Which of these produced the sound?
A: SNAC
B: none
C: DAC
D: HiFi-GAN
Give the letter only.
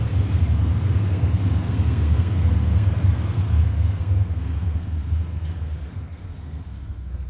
A